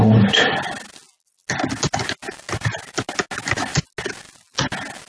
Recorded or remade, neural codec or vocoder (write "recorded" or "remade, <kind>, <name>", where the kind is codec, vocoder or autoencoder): recorded